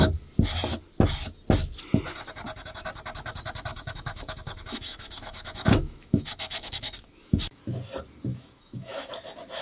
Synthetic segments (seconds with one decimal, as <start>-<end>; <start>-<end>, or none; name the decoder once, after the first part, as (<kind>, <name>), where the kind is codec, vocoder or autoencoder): 3.7-7.6 (autoencoder, DAC-VAE); 8.3-9.1